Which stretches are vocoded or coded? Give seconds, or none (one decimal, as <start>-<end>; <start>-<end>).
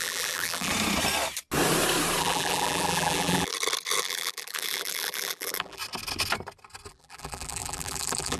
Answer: 0.0-0.7; 2.2-3.5; 4.0-5.8; 6.9-8.4